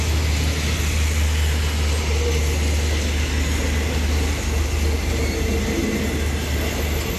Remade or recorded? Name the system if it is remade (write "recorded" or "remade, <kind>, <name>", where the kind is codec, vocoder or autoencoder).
recorded